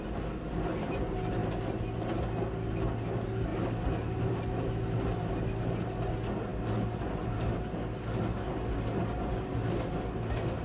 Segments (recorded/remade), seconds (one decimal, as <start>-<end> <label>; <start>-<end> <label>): 0.0-10.6 recorded

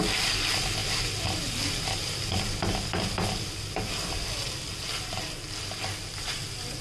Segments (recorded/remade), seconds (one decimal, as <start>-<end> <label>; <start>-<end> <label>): 0.0-6.8 recorded

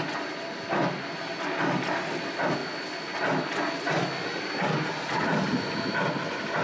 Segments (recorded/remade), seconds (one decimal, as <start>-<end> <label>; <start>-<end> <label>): 0.0-6.6 recorded

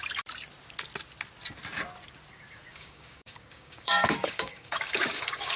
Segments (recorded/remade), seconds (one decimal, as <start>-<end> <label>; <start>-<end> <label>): 0.0-2.7 recorded; 2.7-5.6 remade

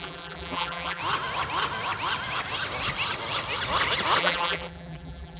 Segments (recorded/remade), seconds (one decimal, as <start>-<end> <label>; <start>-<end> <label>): 0.0-1.0 remade; 1.0-4.2 recorded; 4.2-5.4 remade

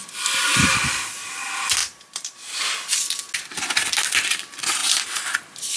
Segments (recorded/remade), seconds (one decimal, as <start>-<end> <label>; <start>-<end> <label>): 0.0-1.8 recorded; 1.8-2.6 remade; 2.6-5.8 recorded